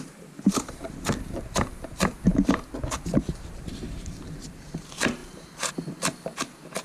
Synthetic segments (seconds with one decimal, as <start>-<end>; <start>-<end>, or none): 0.0-2.3; 3.3-6.8